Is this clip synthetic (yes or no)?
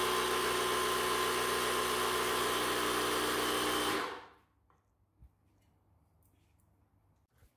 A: no